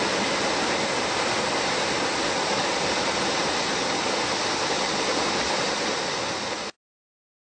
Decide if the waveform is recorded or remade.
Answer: recorded